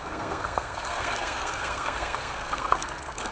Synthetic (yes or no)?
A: yes